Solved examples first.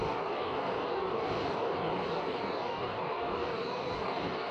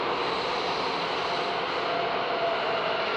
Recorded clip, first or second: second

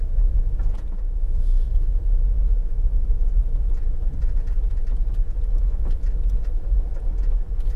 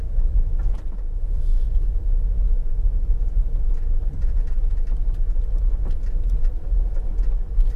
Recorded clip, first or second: second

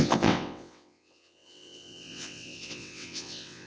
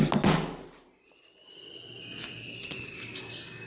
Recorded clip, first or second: second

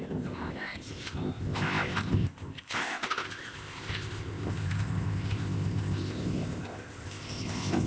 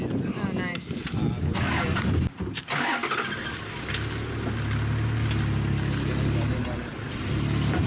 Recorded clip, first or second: second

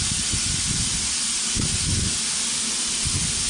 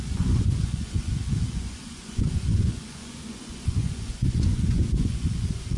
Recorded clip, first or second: first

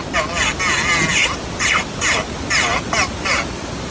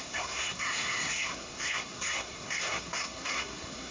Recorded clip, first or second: first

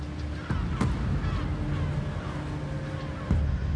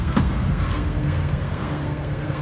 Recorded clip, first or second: first